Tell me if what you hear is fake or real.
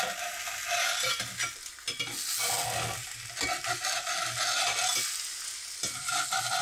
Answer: real